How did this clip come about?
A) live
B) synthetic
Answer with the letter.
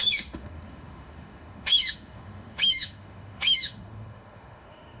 B